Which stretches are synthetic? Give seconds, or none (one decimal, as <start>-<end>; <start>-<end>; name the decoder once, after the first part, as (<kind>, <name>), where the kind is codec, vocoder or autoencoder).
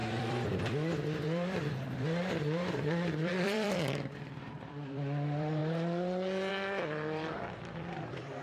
0.0-5.6 (vocoder, BigVGAN v2); 6.5-8.4